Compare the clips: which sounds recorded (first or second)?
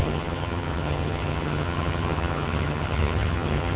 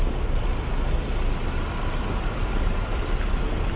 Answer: second